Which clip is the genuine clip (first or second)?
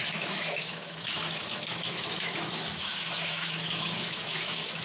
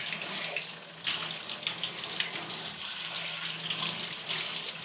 second